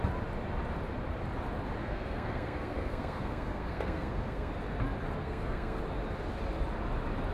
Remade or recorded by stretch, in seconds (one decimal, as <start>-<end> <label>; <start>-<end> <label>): 0.0-1.8 recorded; 1.8-4.5 remade; 4.5-5.2 recorded; 5.2-5.8 remade; 5.8-7.3 recorded